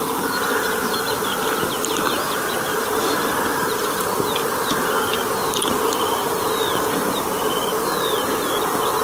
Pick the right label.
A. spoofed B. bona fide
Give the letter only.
B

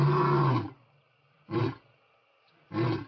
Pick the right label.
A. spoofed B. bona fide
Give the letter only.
B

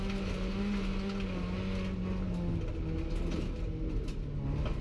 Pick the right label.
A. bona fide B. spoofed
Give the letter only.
A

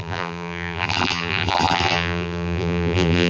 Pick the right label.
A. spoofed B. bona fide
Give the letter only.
A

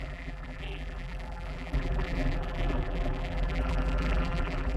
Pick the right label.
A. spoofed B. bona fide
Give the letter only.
A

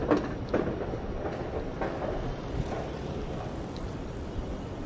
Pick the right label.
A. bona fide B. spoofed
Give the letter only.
B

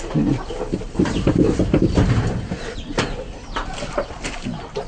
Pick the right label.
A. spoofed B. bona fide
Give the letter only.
A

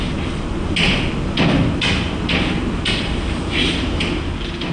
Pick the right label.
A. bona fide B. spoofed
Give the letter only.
A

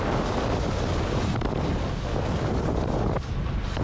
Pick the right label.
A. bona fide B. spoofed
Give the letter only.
A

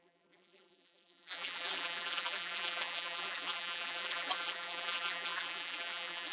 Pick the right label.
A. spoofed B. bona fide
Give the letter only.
A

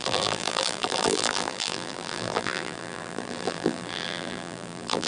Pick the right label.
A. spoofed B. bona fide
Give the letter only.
A